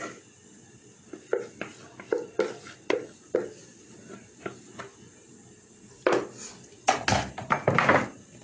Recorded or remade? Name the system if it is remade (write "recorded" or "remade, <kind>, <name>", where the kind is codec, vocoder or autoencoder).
recorded